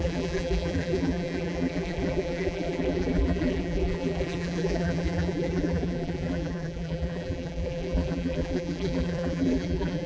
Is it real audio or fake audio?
fake